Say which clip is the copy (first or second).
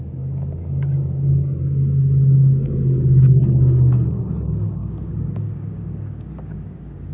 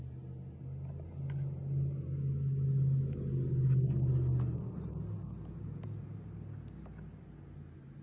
first